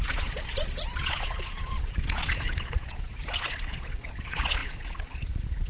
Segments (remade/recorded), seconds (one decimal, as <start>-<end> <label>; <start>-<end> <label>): 0.0-5.7 remade